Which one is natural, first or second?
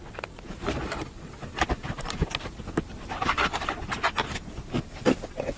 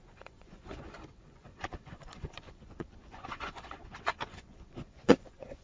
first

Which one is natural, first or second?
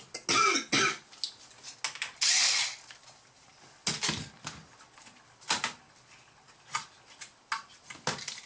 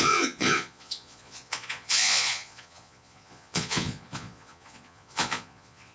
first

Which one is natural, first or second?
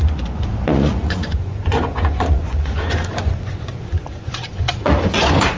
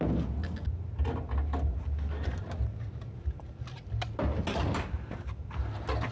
second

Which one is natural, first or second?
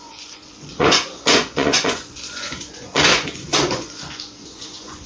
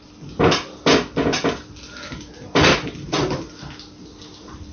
second